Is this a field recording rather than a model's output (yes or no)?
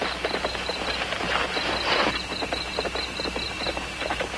yes